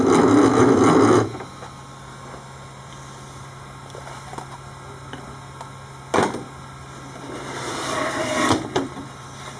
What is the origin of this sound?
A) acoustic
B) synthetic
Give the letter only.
A